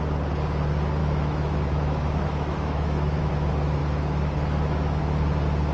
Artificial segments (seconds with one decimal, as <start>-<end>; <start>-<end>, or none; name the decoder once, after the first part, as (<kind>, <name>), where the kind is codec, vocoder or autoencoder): 1.0-3.3 (autoencoder, DAC-VAE); 3.8-5.0